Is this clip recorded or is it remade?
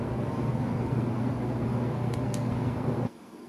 remade